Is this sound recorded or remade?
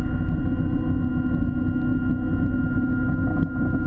recorded